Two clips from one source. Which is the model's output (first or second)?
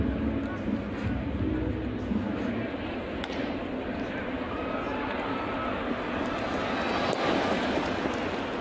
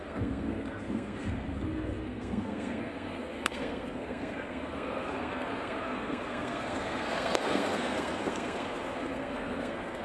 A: second